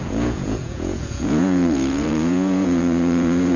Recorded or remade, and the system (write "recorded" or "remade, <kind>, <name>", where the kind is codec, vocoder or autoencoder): remade, vocoder, Vocos